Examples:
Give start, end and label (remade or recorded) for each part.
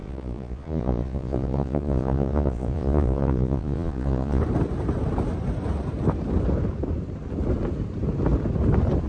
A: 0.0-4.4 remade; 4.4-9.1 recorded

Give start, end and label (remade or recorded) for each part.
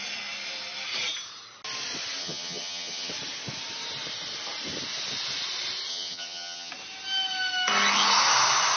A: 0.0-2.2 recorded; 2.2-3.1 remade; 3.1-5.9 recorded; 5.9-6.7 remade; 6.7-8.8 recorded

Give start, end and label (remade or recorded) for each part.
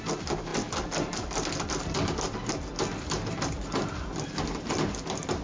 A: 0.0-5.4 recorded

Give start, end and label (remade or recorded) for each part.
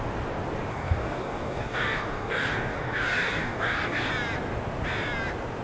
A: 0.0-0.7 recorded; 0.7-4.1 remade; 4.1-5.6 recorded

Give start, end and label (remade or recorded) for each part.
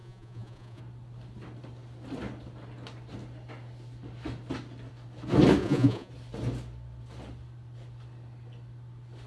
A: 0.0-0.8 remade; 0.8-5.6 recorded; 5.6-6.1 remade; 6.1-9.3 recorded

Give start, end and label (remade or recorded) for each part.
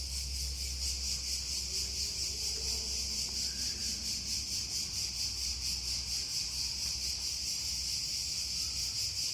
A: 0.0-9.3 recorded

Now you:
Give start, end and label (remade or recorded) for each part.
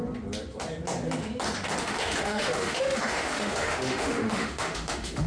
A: 0.0-1.8 recorded; 1.8-5.3 remade